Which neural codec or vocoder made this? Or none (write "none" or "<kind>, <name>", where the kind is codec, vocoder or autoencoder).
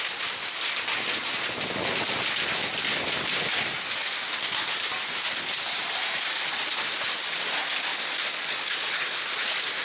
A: none